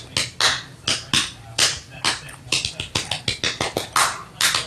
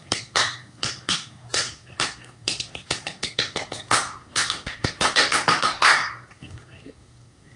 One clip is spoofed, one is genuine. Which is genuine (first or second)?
first